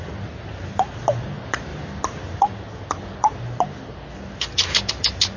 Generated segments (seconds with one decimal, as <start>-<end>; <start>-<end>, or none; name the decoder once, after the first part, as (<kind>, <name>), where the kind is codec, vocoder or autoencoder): none